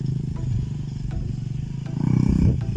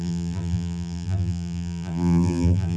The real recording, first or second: first